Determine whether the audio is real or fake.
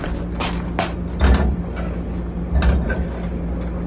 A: real